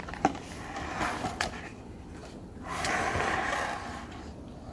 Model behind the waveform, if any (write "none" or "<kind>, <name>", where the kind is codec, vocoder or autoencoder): none